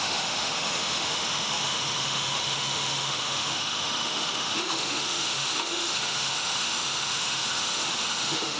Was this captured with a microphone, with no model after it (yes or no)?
no